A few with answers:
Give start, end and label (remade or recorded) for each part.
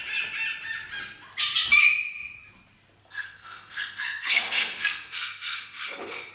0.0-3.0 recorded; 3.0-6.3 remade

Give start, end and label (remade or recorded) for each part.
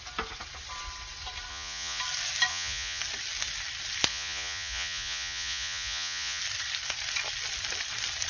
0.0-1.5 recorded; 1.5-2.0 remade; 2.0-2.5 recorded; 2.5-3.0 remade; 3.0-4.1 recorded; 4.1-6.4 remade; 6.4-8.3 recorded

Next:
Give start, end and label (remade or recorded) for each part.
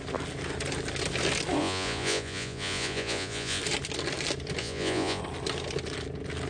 0.0-1.6 recorded; 1.6-3.6 remade; 3.6-4.6 recorded; 4.6-5.2 remade; 5.2-6.5 recorded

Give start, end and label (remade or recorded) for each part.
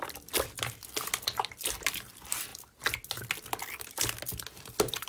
0.0-2.5 remade; 2.5-4.5 recorded; 4.5-5.1 remade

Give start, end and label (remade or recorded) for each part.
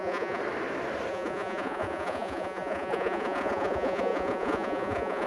0.0-0.4 remade; 0.4-1.1 recorded; 1.1-5.3 remade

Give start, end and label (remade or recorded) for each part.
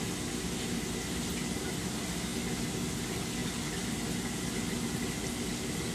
0.0-5.9 recorded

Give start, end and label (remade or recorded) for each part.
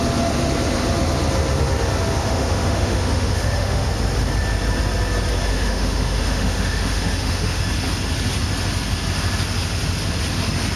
0.0-2.2 recorded; 2.2-3.9 remade; 3.9-5.5 recorded; 5.5-7.6 remade; 7.6-10.8 recorded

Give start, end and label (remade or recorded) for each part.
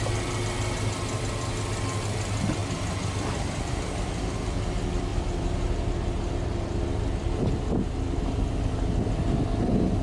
0.0-2.6 recorded; 2.6-3.8 remade; 3.8-5.1 recorded; 5.1-5.7 remade; 5.7-10.0 recorded